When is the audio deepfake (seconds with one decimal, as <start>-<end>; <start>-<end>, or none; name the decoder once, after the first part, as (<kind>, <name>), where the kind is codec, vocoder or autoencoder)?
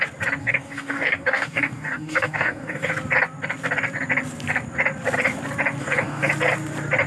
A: 0.4-2.9 (codec, DAC); 5.8-6.3